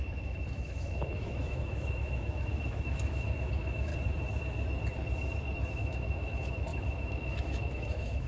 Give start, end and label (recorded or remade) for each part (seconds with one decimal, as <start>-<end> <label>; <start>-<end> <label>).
0.0-3.9 remade; 3.9-5.7 recorded; 5.7-8.3 remade